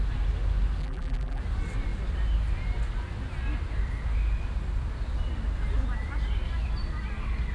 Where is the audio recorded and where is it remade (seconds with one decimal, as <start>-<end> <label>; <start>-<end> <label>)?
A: 0.0-0.8 recorded; 0.8-1.4 remade; 1.4-7.5 recorded